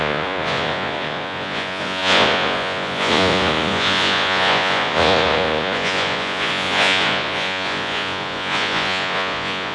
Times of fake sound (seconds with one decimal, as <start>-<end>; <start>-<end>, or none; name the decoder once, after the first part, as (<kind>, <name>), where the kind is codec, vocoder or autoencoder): 0.0-9.7 (vocoder, Vocos)

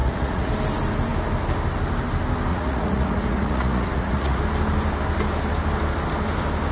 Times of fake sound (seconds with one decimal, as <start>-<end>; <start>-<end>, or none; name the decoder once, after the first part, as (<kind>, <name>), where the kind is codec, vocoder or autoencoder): 0.0-0.5 (vocoder, Vocos); 2.5-4.4

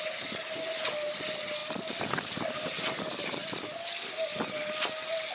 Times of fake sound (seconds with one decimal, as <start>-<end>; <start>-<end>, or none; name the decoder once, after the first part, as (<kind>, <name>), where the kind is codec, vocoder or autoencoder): none

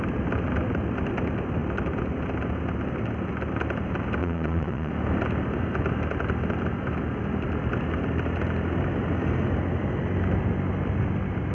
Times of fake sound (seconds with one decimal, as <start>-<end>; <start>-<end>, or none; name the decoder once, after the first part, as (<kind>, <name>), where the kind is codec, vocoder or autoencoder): 4.2-4.9 (vocoder, Vocos)

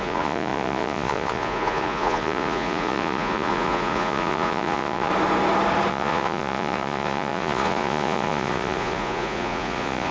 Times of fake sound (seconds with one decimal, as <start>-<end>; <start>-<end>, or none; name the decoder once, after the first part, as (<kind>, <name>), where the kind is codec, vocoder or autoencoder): 0.0-5.1 (vocoder, Vocos); 5.9-10.1

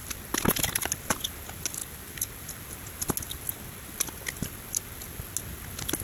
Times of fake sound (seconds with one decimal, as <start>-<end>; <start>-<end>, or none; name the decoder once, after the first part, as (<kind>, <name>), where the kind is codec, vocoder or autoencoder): none

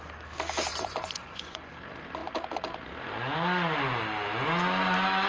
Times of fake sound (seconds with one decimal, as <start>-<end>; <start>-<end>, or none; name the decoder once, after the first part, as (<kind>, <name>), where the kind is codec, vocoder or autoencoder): 0.7-1.7 (vocoder, Vocos)

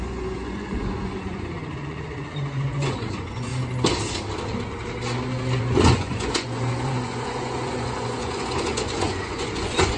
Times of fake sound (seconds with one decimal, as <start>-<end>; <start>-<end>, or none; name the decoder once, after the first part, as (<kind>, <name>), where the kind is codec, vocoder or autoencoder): 0.0-3.5 (vocoder, Vocos); 5.6-10.0